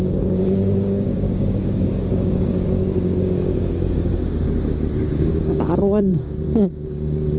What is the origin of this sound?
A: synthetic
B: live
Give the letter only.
A